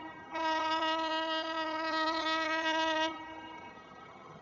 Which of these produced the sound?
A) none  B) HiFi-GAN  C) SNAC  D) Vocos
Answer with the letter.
B